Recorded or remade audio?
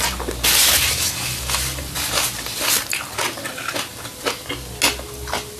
recorded